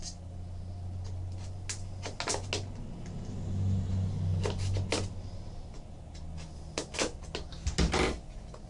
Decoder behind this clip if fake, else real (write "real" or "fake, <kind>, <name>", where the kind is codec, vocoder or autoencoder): real